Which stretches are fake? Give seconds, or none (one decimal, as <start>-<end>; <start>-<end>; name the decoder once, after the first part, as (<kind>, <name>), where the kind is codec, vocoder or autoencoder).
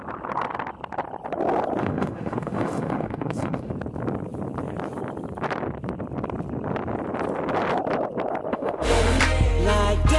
1.8-3.7 (autoencoder, DAC-VAE); 8.5-9.2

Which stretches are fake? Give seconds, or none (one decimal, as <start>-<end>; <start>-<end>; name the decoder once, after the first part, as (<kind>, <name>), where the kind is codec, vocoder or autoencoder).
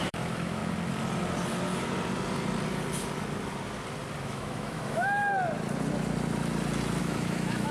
0.0-0.6 (autoencoder, DAC-VAE); 4.2-5.2; 7.0-7.7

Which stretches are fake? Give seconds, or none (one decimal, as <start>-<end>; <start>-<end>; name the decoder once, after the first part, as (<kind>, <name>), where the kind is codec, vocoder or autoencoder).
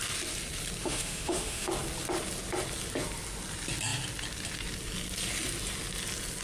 0.8-1.7 (autoencoder, DAC-VAE)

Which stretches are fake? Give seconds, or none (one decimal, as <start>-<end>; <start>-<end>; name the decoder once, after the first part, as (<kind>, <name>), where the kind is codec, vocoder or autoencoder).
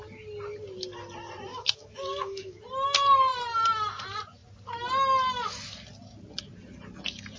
1.5-2.6 (autoencoder, DAC-VAE)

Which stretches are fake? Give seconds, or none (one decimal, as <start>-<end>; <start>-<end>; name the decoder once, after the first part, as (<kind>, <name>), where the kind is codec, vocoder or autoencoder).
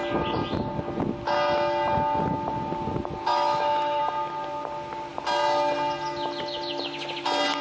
3.3-4.0 (autoencoder, DAC-VAE)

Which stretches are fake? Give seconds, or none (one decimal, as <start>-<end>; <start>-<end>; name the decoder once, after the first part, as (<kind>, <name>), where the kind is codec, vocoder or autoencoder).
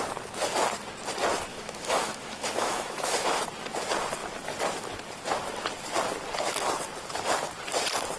1.5-3.4 (autoencoder, DAC-VAE)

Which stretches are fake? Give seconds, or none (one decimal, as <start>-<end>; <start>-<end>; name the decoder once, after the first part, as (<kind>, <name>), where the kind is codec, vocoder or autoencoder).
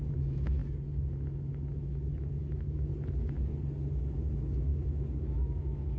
0.0-0.6 (autoencoder, DAC-VAE); 1.1-2.9; 3.9-6.0